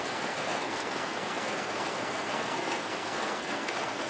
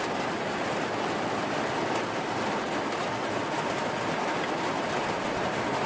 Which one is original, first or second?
second